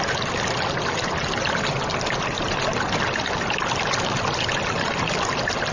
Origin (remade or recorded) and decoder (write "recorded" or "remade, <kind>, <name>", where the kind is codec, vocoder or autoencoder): recorded